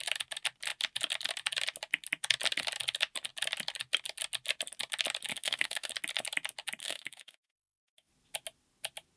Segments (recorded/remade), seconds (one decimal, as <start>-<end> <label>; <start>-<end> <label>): 0.0-5.3 recorded; 5.3-5.9 remade; 5.9-6.8 recorded; 6.8-8.1 remade; 8.1-9.2 recorded